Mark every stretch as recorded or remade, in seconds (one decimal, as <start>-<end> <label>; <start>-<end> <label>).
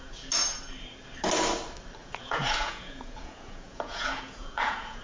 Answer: 0.0-2.0 recorded; 2.0-5.0 remade